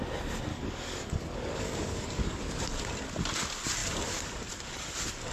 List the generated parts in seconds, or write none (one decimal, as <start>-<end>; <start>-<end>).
0.5-2.6